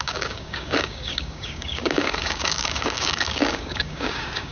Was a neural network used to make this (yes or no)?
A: yes